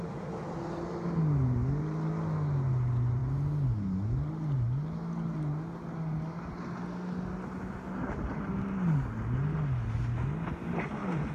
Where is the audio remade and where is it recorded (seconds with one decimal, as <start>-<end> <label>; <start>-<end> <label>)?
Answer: 0.0-11.3 recorded